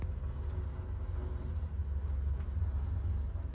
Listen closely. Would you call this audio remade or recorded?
recorded